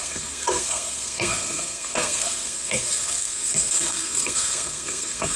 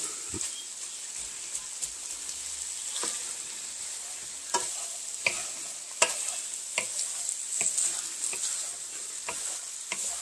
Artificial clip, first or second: first